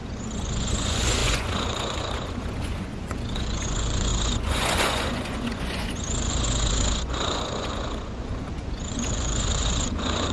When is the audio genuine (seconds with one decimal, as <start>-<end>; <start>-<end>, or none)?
none